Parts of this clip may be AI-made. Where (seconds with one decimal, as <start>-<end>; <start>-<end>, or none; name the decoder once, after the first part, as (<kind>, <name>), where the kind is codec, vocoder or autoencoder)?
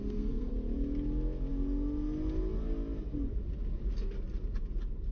0.0-0.5 (codec, SNAC)